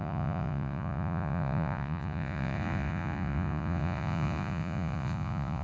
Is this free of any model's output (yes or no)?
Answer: no